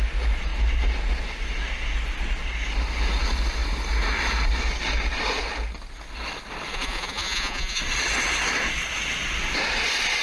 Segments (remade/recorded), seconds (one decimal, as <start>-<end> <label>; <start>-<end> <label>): 0.0-6.7 recorded; 6.7-7.8 remade; 7.8-10.2 recorded